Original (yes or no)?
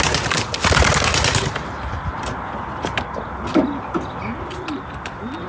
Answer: yes